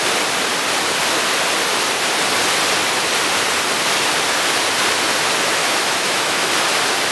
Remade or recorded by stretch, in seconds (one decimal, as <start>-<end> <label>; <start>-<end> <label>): 0.0-5.6 recorded; 5.6-6.5 remade; 6.5-7.1 recorded